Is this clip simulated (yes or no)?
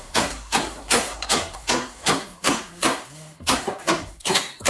yes